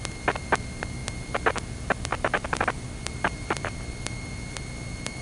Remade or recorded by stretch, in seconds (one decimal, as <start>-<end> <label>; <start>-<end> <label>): 0.0-2.1 recorded; 2.1-5.2 remade